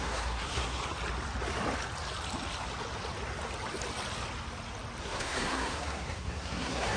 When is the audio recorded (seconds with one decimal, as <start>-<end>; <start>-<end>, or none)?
0.8-5.0